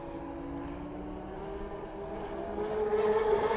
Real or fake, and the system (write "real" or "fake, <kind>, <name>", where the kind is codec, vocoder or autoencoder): real